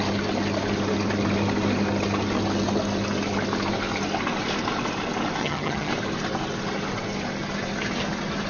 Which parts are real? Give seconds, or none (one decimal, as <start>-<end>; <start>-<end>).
0.0-5.4; 5.9-8.5